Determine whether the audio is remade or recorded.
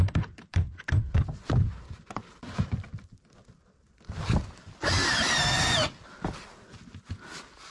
recorded